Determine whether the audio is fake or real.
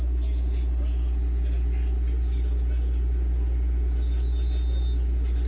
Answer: real